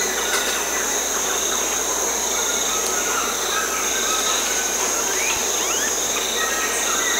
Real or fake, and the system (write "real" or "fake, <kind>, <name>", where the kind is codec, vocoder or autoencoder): fake, vocoder, BigVGAN v2